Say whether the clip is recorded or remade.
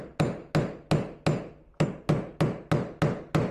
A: recorded